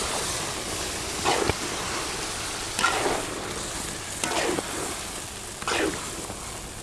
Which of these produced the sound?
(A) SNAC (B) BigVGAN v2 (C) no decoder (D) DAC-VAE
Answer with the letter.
C